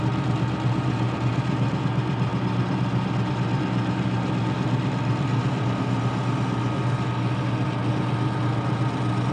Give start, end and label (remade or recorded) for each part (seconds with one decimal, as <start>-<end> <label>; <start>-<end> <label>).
0.0-9.3 recorded